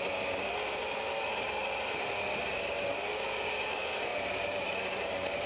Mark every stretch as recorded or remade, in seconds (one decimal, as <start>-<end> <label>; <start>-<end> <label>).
0.0-4.1 recorded; 4.1-4.8 remade; 4.8-5.5 recorded